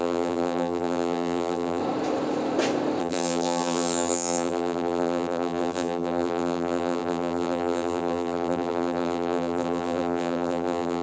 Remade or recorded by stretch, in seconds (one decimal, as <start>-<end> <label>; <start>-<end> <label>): 0.0-1.8 remade; 1.8-3.0 recorded; 3.0-11.0 remade